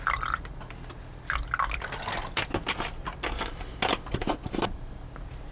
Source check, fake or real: real